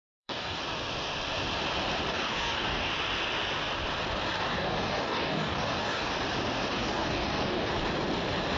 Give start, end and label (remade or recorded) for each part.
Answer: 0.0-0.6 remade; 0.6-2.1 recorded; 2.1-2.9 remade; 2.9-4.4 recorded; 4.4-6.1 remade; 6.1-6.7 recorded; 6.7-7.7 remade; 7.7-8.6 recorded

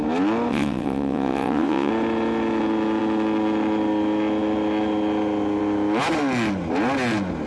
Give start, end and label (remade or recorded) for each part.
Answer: 0.0-0.5 recorded; 0.5-1.9 remade; 1.9-7.5 recorded

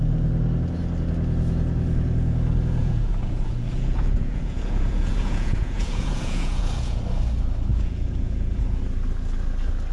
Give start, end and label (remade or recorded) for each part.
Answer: 0.0-2.8 recorded; 2.8-7.0 remade; 7.0-7.7 recorded; 7.7-8.8 remade; 8.8-9.9 recorded